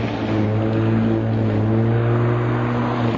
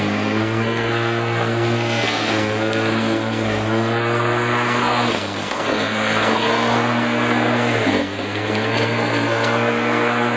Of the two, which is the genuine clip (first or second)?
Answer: first